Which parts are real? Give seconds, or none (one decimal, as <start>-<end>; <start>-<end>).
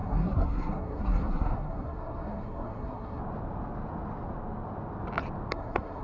3.2-5.5